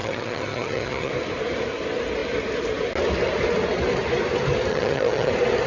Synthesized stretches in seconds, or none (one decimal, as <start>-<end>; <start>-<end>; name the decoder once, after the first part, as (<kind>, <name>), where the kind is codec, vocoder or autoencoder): 0.0-1.1 (vocoder, HiFi-GAN); 4.7-5.3